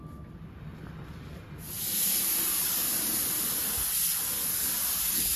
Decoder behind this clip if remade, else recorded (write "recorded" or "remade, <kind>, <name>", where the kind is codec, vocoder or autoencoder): recorded